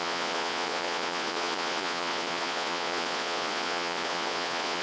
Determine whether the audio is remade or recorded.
remade